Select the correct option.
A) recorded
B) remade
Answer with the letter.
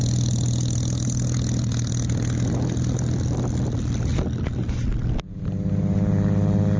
A